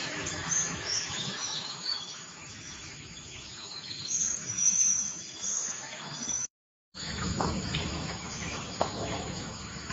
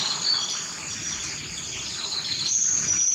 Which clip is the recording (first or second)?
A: second